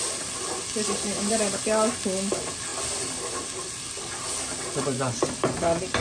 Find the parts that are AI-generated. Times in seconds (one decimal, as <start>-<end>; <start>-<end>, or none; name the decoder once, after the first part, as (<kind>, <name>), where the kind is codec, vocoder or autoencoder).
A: none